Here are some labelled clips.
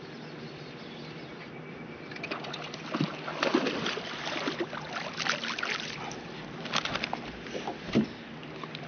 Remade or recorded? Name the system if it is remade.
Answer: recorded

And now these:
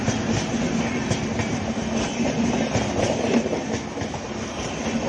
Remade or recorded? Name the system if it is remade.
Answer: recorded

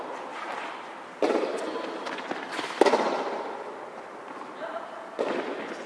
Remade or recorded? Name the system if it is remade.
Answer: recorded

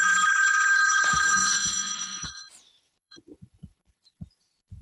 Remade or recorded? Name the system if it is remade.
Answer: remade, vocoder, Vocos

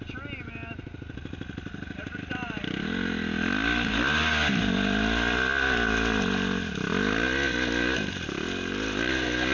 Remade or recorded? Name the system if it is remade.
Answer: recorded